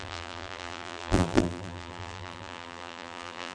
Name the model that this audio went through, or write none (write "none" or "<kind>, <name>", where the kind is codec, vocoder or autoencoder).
vocoder, BigVGAN v2